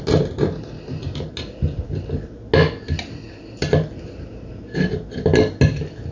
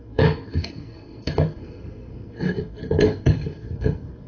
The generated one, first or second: second